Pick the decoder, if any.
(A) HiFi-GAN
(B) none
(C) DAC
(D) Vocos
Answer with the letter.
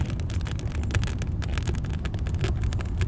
B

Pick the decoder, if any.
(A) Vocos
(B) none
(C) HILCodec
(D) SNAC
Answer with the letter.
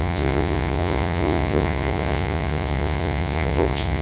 A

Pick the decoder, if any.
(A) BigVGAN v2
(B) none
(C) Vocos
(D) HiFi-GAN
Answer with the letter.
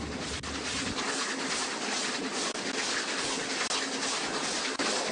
B